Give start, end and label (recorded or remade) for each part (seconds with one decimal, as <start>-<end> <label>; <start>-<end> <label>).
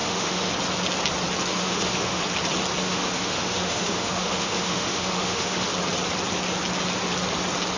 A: 0.0-0.5 remade; 0.5-1.5 recorded; 1.5-2.2 remade; 2.2-2.8 recorded; 2.8-5.7 remade; 5.7-7.8 recorded